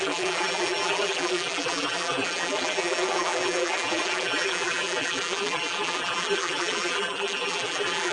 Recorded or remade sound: remade